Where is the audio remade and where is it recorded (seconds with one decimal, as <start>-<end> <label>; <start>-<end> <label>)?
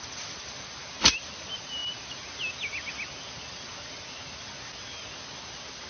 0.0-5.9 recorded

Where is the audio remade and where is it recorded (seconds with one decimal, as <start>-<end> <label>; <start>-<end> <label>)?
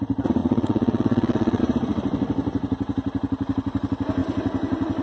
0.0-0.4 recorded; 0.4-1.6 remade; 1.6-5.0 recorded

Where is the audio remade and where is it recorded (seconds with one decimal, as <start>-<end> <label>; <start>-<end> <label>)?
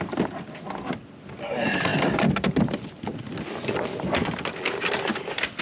0.0-5.6 recorded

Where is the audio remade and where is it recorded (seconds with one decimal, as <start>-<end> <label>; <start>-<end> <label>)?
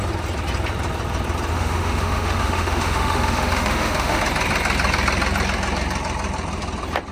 0.0-1.5 recorded; 1.5-4.2 remade; 4.2-7.1 recorded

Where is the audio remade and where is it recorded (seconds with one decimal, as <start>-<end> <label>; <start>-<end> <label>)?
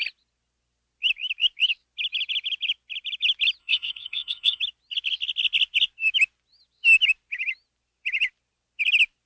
0.0-3.6 recorded; 3.6-4.6 remade; 4.6-9.3 recorded